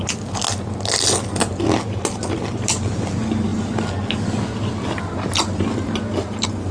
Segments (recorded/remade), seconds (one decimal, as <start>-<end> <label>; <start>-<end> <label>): 0.0-6.7 recorded